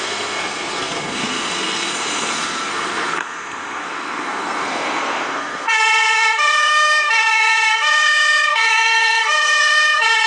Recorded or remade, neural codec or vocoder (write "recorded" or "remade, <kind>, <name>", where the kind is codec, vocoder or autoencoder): remade, codec, SNAC